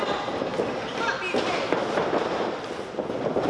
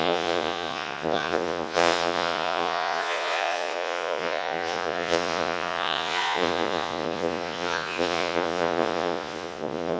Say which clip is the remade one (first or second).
second